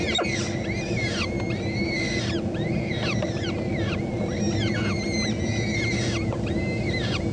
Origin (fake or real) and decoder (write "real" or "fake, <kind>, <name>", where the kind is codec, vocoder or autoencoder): real